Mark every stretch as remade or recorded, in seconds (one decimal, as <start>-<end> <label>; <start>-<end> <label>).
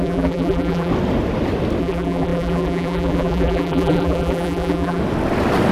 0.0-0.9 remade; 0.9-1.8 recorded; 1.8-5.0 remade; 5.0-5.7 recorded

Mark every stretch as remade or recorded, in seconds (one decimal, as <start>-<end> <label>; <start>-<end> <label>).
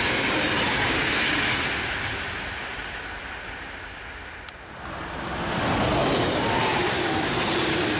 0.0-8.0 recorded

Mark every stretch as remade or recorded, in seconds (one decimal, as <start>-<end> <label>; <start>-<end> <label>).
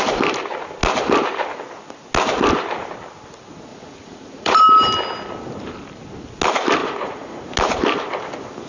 0.0-3.7 recorded; 3.7-4.6 remade; 4.6-6.8 recorded; 6.8-7.5 remade; 7.5-8.7 recorded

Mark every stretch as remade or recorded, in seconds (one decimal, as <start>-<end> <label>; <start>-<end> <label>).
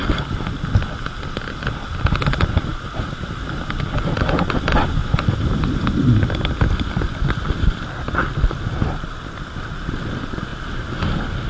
0.0-5.0 recorded; 5.0-7.3 remade; 7.3-10.5 recorded; 10.5-11.1 remade; 11.1-11.5 recorded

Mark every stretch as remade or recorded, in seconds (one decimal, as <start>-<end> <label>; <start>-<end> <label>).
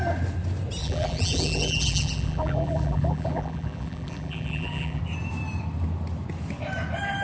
0.0-0.8 recorded; 0.8-5.0 remade; 5.0-7.2 recorded